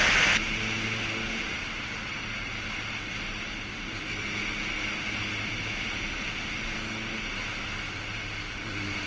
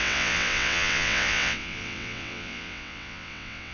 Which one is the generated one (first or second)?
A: second